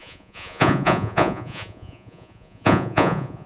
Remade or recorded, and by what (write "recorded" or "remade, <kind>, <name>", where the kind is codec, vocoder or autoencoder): remade, vocoder, Vocos